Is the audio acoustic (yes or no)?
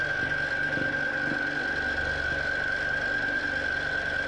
yes